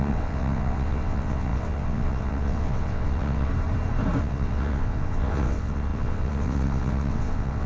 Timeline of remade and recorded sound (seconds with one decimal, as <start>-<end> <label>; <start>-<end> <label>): 0.0-3.5 remade; 3.5-4.2 recorded; 4.2-7.7 remade